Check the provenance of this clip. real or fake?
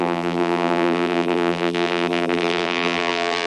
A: fake